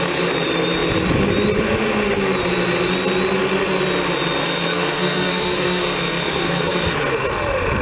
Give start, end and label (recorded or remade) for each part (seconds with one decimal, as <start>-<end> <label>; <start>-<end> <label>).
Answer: 0.0-4.4 recorded; 4.4-7.0 remade; 7.0-7.8 recorded